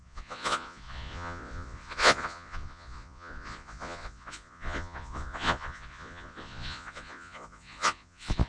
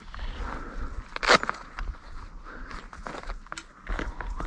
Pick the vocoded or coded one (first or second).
first